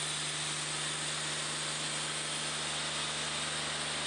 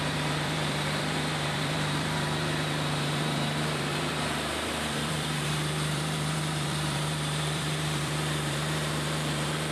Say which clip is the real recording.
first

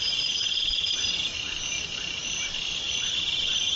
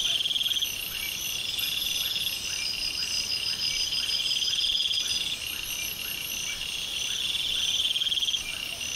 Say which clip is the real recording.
second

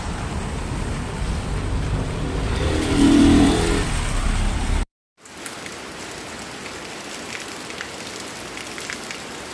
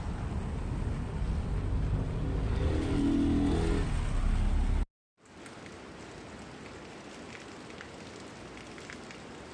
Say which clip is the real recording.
second